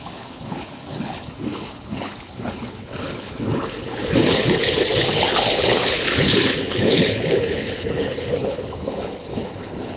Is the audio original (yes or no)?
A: no